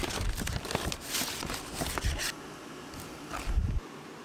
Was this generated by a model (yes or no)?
no